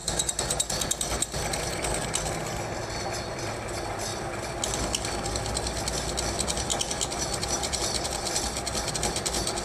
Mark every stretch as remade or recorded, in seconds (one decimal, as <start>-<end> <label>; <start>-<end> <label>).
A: 0.0-9.6 recorded